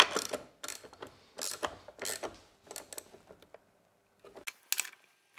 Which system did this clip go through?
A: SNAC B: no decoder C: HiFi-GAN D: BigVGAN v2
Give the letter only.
B